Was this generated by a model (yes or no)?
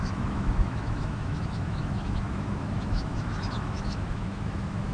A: yes